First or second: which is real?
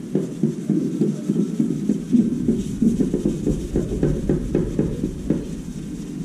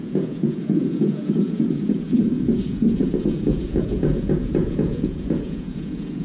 first